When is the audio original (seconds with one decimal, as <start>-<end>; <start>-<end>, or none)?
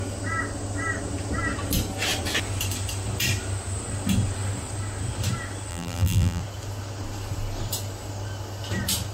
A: 0.0-5.7; 6.4-9.1